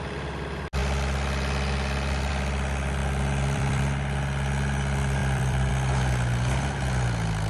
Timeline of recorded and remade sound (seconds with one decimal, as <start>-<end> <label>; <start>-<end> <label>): 0.0-0.8 recorded; 0.8-2.3 remade; 2.3-3.0 recorded; 3.0-3.8 remade; 3.8-5.2 recorded; 5.2-5.7 remade; 5.7-7.5 recorded